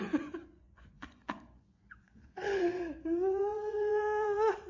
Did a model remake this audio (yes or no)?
yes